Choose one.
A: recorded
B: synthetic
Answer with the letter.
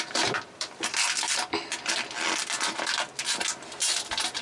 B